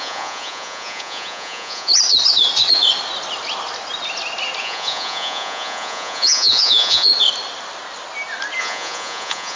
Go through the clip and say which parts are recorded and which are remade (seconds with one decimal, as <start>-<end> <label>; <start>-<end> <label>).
0.0-1.9 remade; 1.9-4.6 recorded; 4.6-7.1 remade; 7.1-8.6 recorded; 8.6-9.6 remade